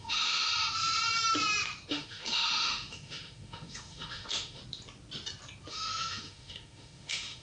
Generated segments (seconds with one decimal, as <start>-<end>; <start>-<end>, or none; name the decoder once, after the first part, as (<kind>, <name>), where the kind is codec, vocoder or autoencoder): 0.0-0.5 (autoencoder, DAC-VAE); 1.9-4.6; 5.7-7.4